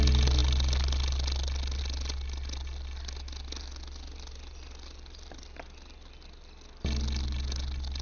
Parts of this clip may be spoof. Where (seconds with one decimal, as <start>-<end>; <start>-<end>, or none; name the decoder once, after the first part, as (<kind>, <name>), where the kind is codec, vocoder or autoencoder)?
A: none